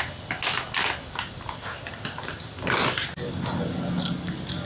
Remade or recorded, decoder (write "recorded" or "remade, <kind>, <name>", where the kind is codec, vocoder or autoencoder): recorded